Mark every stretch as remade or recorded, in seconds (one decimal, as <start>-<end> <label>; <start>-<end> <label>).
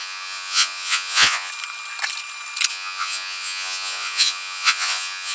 0.0-1.5 remade; 1.5-2.7 recorded; 2.7-5.3 remade